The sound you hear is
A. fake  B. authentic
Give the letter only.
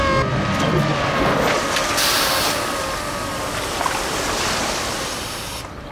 B